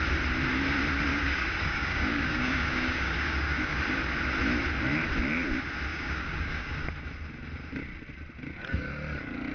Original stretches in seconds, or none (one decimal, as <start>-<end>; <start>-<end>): 0.0-1.1; 3.8-5.9; 6.7-9.5